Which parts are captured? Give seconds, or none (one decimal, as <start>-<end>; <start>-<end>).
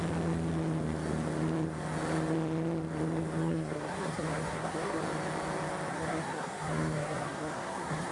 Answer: 0.0-3.4; 5.0-5.9